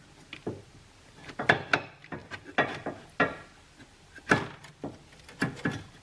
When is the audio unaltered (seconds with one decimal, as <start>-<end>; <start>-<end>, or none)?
0.0-6.0

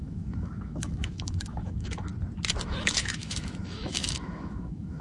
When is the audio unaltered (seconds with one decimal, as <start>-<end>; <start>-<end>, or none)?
2.1-2.6

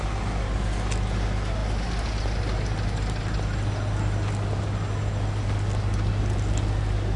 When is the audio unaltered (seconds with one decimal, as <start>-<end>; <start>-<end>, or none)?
0.0-7.2